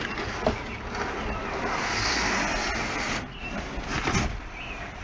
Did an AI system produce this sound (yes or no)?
no